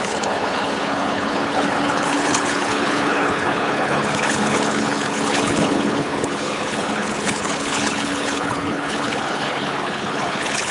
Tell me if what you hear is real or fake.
fake